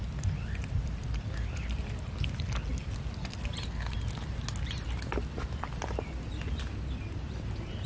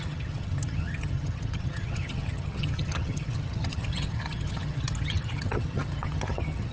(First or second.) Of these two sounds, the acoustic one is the first